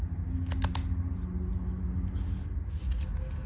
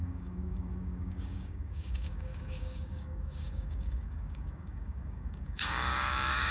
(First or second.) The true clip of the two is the first